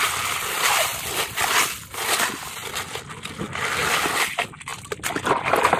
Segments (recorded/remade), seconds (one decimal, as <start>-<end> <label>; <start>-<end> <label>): 0.0-3.8 recorded; 3.8-4.3 remade; 4.3-5.8 recorded